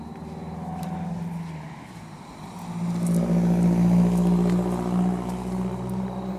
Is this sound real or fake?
real